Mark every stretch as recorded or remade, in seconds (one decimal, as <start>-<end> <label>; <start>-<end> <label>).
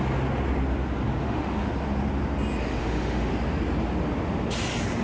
0.0-1.2 recorded; 1.2-1.7 remade; 1.7-2.8 recorded; 2.8-3.3 remade; 3.3-5.0 recorded